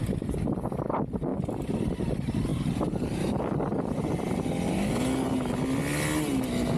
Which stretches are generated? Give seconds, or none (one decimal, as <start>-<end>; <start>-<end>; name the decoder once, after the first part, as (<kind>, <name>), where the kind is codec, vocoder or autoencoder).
none